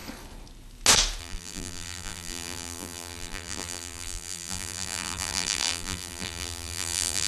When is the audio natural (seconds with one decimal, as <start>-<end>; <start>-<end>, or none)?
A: 0.0-1.2